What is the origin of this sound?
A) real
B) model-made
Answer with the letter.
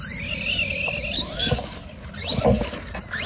A